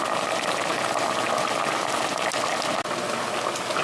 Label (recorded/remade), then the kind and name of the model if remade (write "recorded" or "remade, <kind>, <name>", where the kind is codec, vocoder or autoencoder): recorded